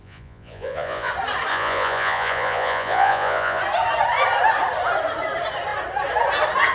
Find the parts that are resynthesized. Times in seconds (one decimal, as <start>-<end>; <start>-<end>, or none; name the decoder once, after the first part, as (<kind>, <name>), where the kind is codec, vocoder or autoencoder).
0.0-1.1 (vocoder, Vocos); 1.5-3.6